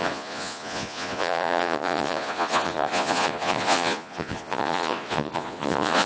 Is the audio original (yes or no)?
no